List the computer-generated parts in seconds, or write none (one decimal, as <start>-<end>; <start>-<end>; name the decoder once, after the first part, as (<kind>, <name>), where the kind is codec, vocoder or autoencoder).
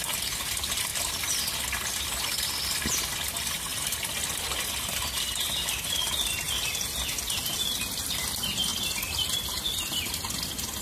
none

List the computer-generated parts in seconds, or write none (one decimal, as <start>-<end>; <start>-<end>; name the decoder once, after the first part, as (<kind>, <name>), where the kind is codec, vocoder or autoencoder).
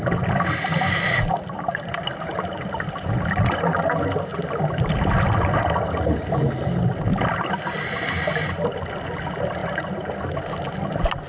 4.3-4.9 (vocoder, BigVGAN v2); 7.1-8.9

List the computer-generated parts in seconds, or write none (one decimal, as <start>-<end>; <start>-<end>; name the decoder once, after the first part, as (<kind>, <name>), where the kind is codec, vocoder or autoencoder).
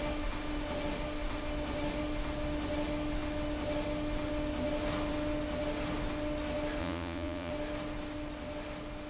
6.8-7.5 (vocoder, Vocos)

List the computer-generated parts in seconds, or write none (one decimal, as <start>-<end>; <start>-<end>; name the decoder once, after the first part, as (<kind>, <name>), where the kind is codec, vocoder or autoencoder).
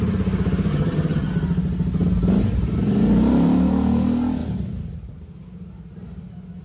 0.7-1.3 (vocoder, HiFi-GAN)